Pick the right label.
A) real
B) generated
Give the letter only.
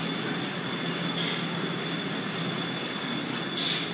A